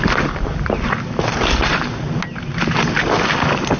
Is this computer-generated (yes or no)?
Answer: no